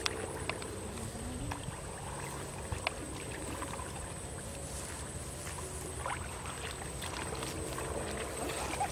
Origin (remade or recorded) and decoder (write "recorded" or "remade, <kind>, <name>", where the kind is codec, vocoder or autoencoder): recorded